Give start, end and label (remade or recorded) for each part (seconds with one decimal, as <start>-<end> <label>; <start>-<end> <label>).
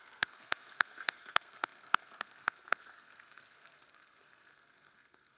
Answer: 0.0-5.4 remade